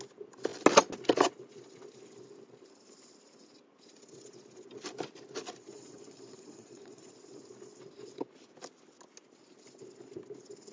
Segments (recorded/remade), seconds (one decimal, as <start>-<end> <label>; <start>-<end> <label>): 0.0-5.7 recorded; 5.7-7.1 remade; 7.1-10.7 recorded